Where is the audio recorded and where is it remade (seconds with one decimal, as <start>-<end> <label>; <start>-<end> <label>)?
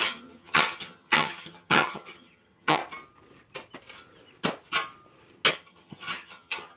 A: 0.0-2.8 remade; 2.8-5.5 recorded; 5.5-6.8 remade